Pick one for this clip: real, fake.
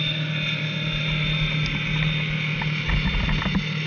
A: real